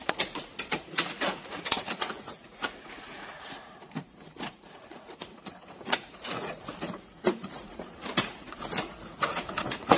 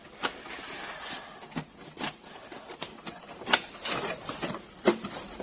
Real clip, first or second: second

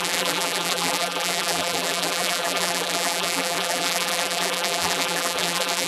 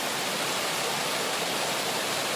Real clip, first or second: second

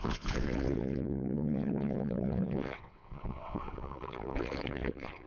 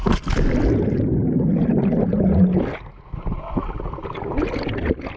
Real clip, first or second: second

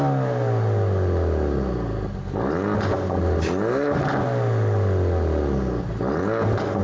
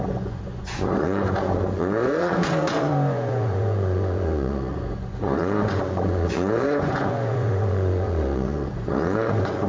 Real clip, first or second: first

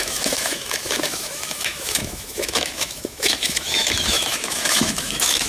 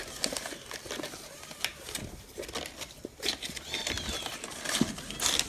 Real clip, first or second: second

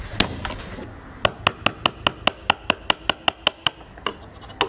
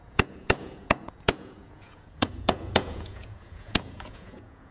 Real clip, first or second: first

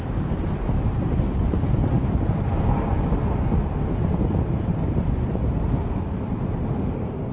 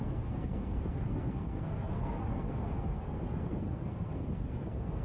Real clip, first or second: first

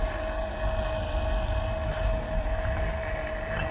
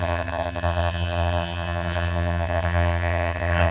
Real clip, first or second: first